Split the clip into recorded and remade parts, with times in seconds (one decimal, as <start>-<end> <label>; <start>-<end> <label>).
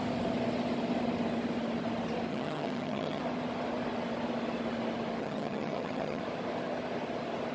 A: 0.0-2.3 recorded; 2.3-3.2 remade; 3.2-5.2 recorded; 5.2-6.2 remade; 6.2-7.5 recorded